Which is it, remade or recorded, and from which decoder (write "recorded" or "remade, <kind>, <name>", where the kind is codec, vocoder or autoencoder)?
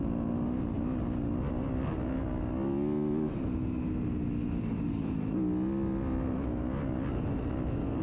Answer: recorded